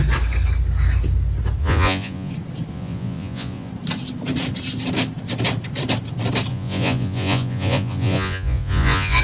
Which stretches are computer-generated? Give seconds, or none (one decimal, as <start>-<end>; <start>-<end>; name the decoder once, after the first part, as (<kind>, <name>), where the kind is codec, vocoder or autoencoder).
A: 1.6-2.3 (vocoder, Vocos); 2.7-3.7; 6.5-9.2